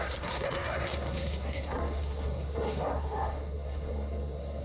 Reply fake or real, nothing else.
fake